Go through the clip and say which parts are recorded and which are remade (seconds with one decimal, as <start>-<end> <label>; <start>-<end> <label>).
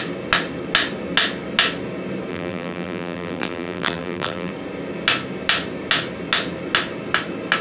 0.0-2.3 recorded; 2.3-4.5 remade; 4.5-7.6 recorded